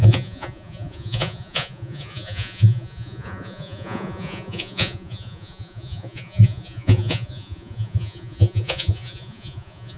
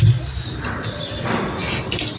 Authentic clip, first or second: second